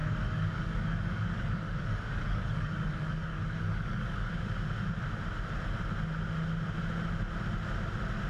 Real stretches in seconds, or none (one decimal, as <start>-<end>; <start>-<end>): 4.3-8.3